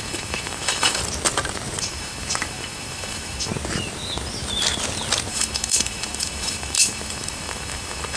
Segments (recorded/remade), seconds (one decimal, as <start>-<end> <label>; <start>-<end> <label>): 0.0-1.0 remade; 1.0-1.8 recorded; 1.8-3.5 remade; 3.5-5.3 recorded; 5.3-8.2 remade